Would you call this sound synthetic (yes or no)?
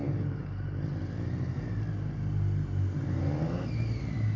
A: no